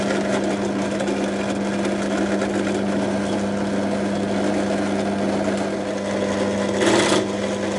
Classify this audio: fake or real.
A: real